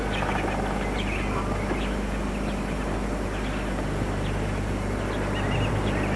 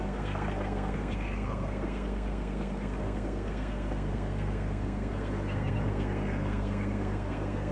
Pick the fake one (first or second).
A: second